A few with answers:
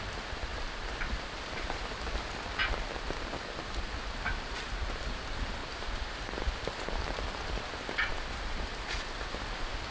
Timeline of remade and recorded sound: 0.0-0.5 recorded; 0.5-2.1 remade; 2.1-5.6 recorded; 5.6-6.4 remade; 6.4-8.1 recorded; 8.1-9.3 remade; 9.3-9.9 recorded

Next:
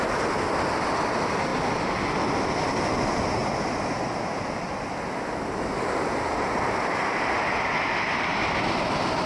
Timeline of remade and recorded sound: 0.0-9.3 recorded

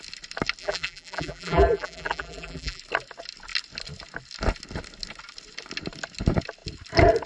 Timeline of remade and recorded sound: 0.0-0.6 recorded; 0.6-2.8 remade; 2.8-7.3 recorded

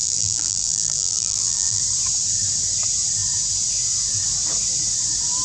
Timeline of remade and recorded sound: 0.0-1.8 remade; 1.8-5.4 recorded